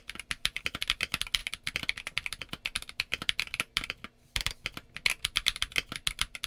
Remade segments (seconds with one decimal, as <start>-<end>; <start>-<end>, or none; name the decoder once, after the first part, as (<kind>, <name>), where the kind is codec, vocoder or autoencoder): none